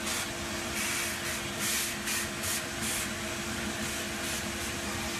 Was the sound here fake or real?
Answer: real